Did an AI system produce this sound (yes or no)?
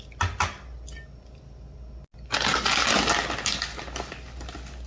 no